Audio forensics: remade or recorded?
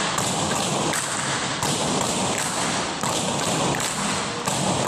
recorded